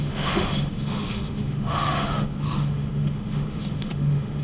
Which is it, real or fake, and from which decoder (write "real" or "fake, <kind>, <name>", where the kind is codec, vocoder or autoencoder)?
fake, autoencoder, DAC-VAE